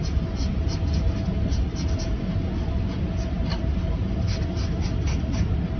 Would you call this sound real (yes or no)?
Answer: yes